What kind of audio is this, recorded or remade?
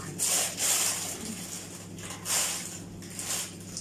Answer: recorded